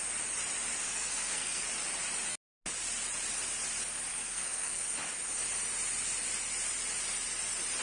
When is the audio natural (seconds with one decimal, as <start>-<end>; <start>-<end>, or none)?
0.0-0.8; 1.7-4.1; 4.8-7.8